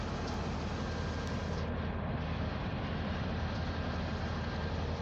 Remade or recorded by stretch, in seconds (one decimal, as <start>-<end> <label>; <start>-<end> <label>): 0.0-5.0 recorded